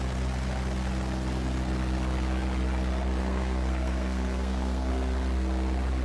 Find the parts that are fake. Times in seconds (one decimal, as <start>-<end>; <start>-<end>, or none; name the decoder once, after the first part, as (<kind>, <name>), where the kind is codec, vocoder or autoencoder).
3.2-4.9 (codec, SNAC)